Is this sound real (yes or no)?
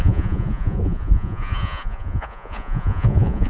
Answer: no